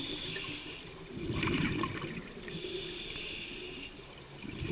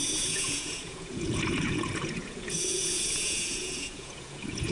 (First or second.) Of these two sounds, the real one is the first